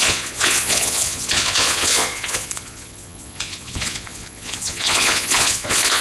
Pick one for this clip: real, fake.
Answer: fake